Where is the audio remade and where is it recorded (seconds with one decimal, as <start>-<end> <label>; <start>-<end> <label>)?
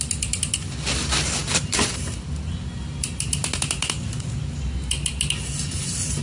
0.0-6.2 recorded